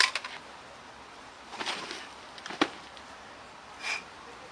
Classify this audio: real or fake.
real